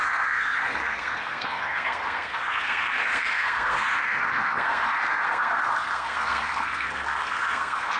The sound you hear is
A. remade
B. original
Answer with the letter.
A